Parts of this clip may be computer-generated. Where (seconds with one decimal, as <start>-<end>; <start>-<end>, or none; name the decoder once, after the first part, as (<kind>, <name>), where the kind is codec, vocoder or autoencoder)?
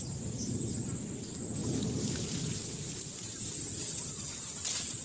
none